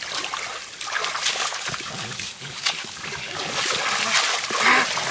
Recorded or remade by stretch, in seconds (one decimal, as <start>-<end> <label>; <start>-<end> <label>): 0.0-1.3 recorded; 1.3-3.6 remade; 3.6-5.1 recorded